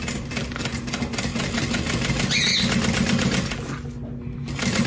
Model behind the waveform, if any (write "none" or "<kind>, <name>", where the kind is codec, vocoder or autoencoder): none